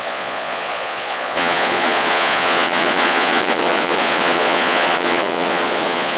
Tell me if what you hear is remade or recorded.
remade